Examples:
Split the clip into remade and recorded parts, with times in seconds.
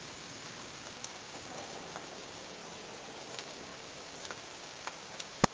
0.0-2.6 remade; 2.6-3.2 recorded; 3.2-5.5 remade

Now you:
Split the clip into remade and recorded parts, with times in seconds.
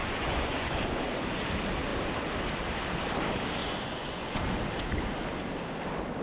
0.0-1.0 remade; 1.0-3.6 recorded; 3.6-4.4 remade; 4.4-6.2 recorded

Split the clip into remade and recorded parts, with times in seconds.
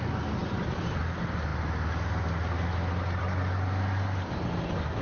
0.0-0.4 recorded; 0.4-1.0 remade; 1.0-5.0 recorded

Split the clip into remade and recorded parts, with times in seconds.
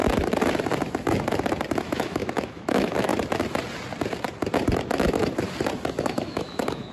0.0-1.8 recorded; 1.8-3.1 remade; 3.1-6.0 recorded; 6.0-6.9 remade